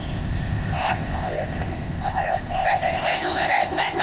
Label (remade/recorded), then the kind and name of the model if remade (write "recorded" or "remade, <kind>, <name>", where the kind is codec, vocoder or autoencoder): remade, codec, ZipCodec